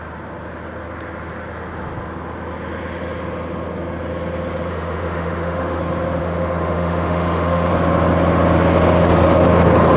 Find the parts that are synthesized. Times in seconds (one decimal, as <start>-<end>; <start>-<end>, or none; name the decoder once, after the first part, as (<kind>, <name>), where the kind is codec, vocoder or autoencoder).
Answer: 4.7-5.8 (autoencoder, DAC-VAE); 6.2-7.7